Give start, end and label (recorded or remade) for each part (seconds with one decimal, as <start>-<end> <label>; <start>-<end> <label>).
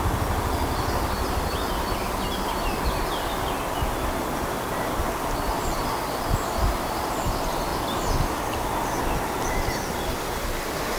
0.0-11.0 recorded